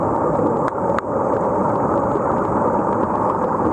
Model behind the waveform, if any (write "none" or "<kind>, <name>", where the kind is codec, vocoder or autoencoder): none